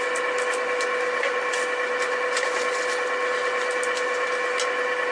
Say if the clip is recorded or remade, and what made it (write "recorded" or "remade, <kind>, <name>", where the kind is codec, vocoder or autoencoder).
recorded